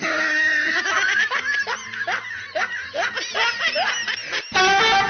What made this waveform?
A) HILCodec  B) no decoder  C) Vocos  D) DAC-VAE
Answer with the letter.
B